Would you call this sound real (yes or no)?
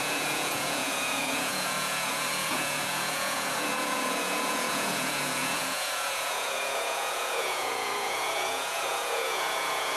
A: no